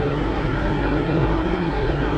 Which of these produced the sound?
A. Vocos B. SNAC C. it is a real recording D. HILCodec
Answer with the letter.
B